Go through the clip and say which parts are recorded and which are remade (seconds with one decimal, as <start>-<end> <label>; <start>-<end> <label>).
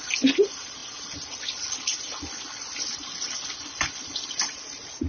0.0-5.1 recorded